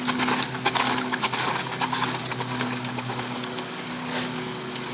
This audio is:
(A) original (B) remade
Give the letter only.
B